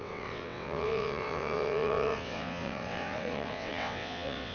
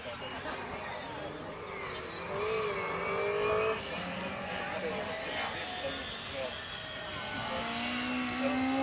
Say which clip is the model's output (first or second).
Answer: first